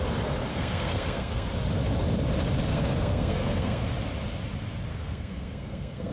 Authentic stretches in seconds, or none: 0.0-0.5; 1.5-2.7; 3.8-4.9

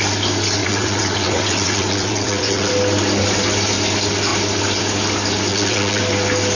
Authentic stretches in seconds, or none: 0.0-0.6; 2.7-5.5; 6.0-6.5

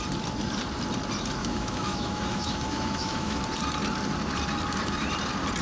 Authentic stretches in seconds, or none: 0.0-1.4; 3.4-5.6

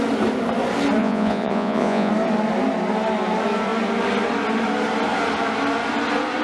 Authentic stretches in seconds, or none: 0.0-1.0; 2.1-6.4